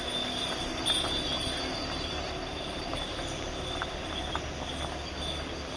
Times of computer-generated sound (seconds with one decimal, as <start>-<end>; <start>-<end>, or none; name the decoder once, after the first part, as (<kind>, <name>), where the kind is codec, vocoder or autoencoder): 0.7-4.2 (vocoder, BigVGAN v2)